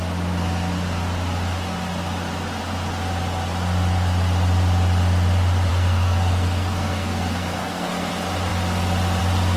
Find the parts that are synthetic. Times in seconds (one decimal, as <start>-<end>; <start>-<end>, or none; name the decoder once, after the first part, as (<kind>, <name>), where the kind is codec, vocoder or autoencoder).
5.7-8.1 (codec, SNAC)